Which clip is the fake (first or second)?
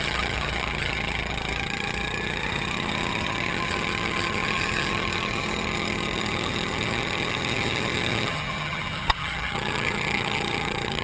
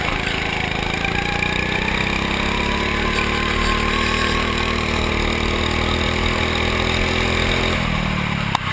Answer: first